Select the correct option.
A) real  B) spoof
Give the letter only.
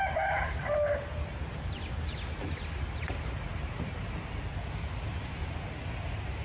A